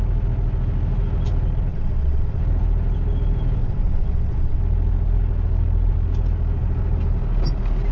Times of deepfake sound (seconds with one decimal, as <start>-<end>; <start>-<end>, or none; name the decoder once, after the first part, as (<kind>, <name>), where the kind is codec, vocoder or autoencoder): 1.7-2.4 (vocoder, WaveNeXt); 3.6-4.6

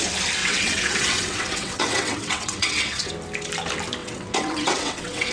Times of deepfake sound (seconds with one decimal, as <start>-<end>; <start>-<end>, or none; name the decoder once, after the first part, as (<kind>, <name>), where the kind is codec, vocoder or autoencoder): 0.4-3.1 (vocoder, WaveNeXt); 4.0-5.3